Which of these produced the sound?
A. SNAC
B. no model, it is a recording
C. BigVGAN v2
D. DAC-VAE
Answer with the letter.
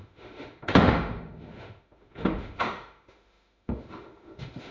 D